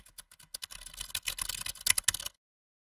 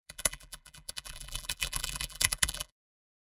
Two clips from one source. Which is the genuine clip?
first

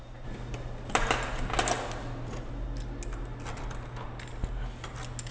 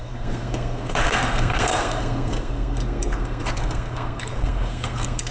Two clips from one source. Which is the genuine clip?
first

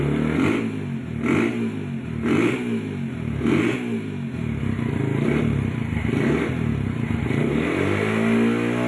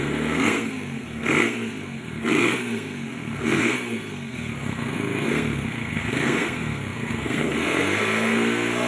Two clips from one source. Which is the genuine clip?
first